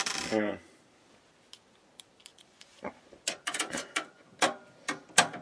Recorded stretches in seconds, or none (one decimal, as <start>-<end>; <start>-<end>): 0.0-2.3; 4.4-5.4